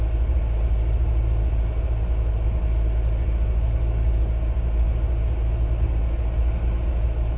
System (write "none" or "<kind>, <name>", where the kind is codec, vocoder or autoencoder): none